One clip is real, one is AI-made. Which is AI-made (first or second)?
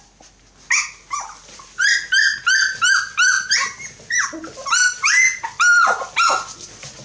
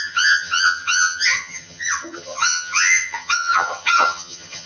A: second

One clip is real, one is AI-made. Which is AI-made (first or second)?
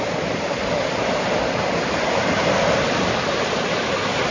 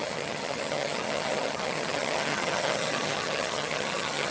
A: second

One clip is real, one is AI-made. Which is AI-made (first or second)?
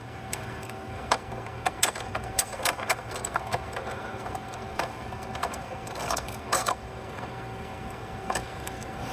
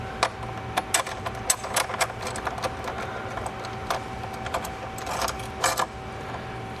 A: first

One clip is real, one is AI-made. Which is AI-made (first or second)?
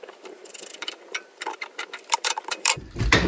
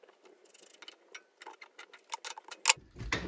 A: first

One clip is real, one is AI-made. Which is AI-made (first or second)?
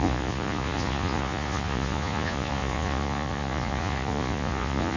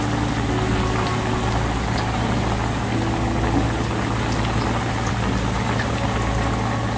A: first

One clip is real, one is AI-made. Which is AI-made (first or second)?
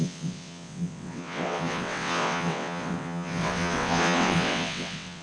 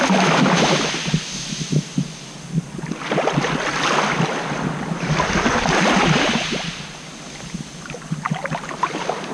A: first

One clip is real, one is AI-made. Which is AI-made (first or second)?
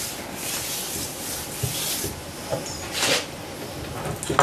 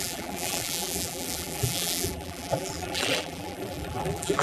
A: second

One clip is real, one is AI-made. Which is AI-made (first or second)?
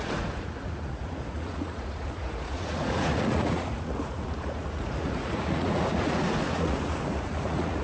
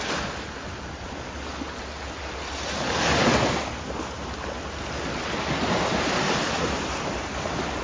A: first